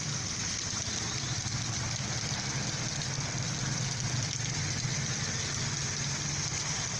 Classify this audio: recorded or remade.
recorded